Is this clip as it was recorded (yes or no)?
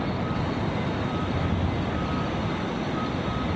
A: yes